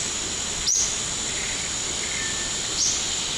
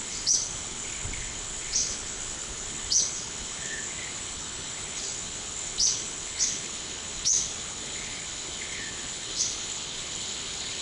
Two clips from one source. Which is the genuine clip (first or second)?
first